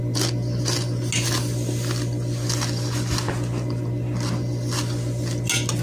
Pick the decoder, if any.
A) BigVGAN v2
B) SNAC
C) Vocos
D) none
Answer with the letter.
D